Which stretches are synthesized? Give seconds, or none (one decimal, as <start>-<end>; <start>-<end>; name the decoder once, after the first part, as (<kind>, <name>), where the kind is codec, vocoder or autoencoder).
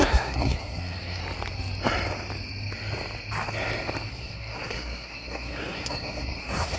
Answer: 0.0-1.2 (codec, SNAC); 4.1-6.8